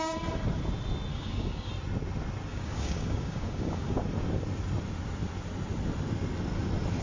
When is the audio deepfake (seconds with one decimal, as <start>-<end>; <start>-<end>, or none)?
1.1-1.7; 2.5-4.0